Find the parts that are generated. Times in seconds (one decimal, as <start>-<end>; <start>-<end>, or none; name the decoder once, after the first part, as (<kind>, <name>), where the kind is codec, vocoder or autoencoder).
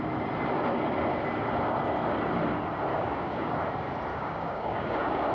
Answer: 2.9-3.5 (codec, DAC); 4.1-5.3